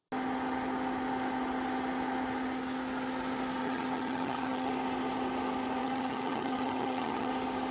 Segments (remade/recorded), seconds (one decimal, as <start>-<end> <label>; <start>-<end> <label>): 0.0-3.6 recorded; 3.6-4.7 remade; 4.7-5.8 recorded; 5.8-7.3 remade; 7.3-7.7 recorded